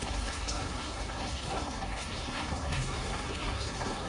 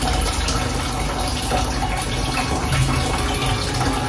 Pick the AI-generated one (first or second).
first